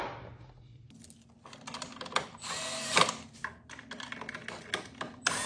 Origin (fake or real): real